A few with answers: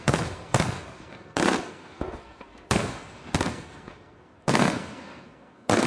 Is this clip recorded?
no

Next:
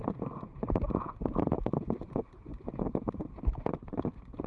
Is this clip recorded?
yes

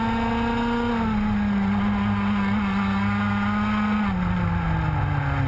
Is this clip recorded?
yes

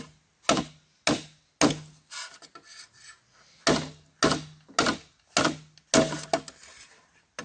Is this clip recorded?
yes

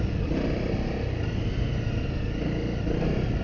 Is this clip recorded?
yes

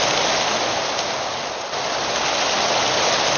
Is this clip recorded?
yes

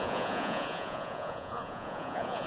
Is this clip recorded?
no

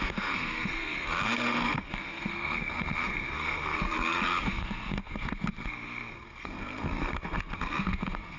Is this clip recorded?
no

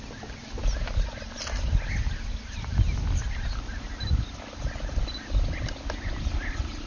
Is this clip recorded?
yes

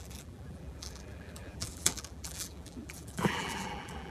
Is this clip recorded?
no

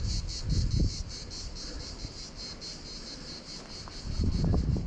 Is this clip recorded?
yes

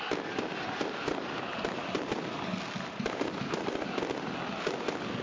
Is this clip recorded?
yes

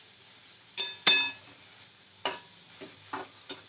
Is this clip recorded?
yes